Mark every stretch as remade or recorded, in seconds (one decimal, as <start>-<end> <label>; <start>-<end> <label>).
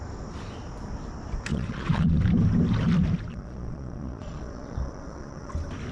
0.0-1.5 recorded; 1.5-2.2 remade; 2.2-3.3 recorded; 3.3-5.5 remade; 5.5-5.9 recorded